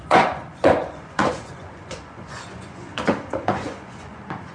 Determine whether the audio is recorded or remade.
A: remade